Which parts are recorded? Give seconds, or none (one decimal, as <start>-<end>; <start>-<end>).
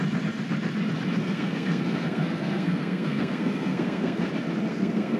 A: 0.0-1.2; 4.3-4.7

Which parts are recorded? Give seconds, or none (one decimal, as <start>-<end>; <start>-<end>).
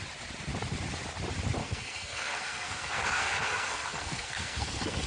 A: 0.0-1.6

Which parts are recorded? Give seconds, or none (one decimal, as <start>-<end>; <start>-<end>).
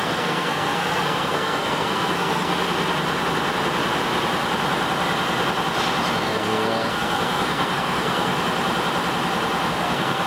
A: 2.5-6.2; 8.3-9.7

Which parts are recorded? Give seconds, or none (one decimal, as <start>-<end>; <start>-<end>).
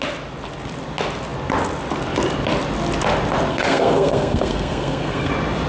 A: 0.0-3.5; 5.3-5.7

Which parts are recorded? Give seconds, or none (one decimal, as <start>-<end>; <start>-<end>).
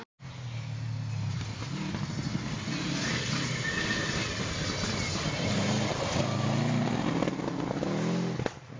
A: 0.0-8.8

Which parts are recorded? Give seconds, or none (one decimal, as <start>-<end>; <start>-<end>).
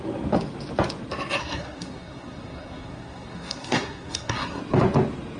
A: 0.0-1.4; 4.6-5.4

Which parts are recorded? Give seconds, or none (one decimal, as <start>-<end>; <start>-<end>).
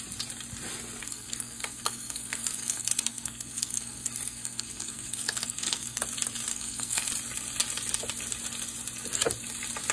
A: 0.0-1.0; 6.0-6.5; 7.1-9.9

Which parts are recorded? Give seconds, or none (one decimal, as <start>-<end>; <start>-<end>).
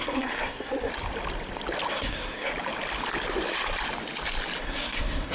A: 0.9-1.9; 2.5-4.6